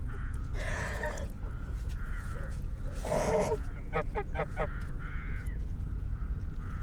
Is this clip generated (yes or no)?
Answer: yes